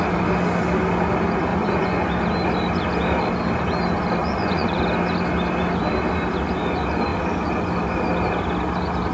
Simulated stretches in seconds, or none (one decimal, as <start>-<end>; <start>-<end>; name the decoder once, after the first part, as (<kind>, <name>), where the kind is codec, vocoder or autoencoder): 1.5-2.1 (vocoder, Vocos); 4.2-4.8